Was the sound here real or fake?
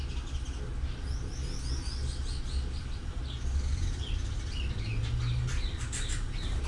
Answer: real